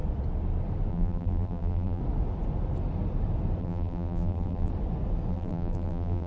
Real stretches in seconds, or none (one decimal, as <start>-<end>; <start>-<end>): 0.0-0.9; 2.0-3.6; 4.7-5.3